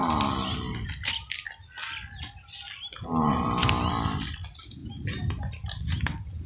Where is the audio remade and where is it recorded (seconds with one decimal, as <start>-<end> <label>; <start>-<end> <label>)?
0.0-6.5 recorded